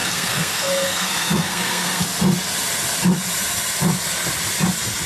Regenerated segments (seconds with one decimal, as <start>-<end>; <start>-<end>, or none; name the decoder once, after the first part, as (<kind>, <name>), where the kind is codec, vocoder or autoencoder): 0.0-2.0 (codec, SNAC)